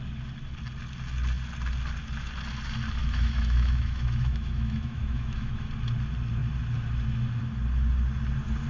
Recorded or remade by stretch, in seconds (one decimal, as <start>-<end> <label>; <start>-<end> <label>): 0.0-3.0 recorded; 3.0-5.7 remade; 5.7-8.7 recorded